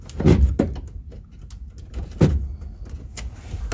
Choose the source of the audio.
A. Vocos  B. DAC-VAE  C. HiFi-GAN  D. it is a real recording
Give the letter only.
D